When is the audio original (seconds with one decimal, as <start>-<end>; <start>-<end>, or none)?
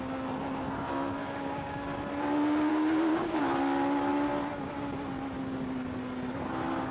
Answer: 0.0-1.2; 2.0-2.7; 3.4-6.9